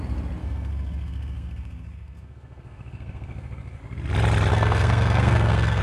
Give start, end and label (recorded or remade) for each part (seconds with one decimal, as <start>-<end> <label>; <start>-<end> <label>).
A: 0.0-0.4 recorded; 0.4-3.8 remade; 3.8-4.5 recorded; 4.5-5.8 remade